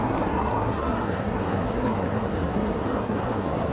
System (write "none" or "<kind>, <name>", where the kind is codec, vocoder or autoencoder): codec, SNAC